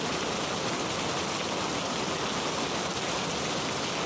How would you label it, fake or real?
real